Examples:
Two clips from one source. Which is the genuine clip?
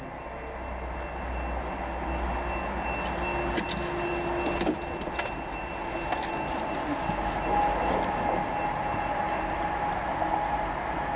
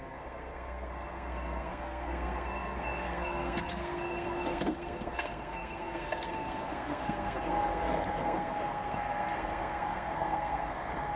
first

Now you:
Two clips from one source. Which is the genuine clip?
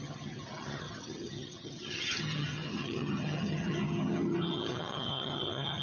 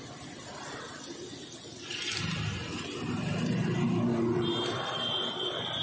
second